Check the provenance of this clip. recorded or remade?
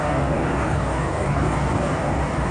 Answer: remade